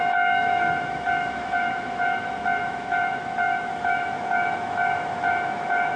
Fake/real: fake